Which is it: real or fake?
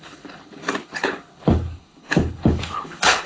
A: fake